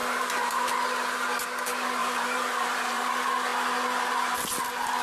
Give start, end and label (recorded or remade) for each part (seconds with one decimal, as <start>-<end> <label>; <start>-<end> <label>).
0.0-0.7 remade; 0.7-2.0 recorded; 2.0-3.1 remade; 3.1-5.0 recorded